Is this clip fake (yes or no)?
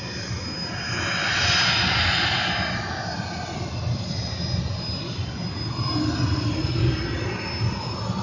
no